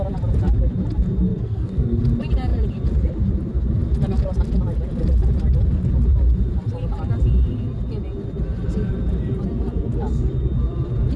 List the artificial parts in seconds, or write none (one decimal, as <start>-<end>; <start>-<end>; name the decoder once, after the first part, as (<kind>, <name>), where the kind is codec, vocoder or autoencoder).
1.3-2.0 (codec, SNAC)